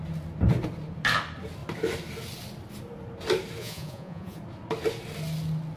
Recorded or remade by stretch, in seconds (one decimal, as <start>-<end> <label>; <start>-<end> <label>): 0.0-3.6 recorded; 3.6-4.4 remade; 4.4-5.8 recorded